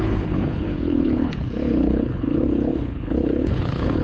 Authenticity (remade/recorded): remade